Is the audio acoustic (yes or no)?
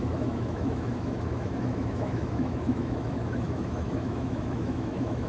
no